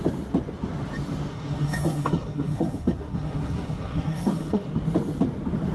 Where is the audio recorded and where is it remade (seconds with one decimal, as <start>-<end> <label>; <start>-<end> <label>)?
0.0-1.3 recorded; 1.3-4.7 remade; 4.7-5.7 recorded